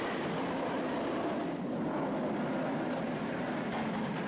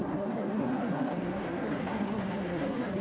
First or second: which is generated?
second